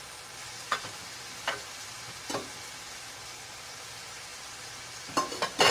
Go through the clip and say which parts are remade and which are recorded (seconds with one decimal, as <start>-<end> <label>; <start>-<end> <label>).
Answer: 0.0-5.7 recorded